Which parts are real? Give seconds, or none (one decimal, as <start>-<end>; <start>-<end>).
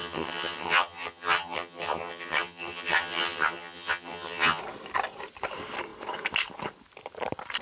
4.6-7.6